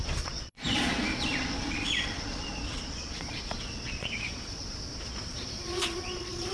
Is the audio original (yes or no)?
no